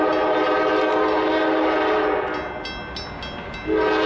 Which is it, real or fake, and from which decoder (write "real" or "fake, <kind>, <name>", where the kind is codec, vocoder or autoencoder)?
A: real